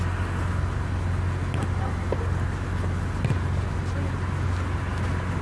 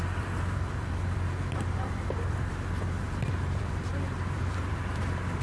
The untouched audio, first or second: first